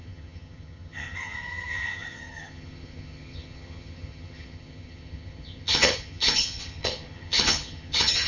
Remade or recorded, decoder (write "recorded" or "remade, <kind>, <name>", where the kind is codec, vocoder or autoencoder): remade, vocoder, HiFi-GAN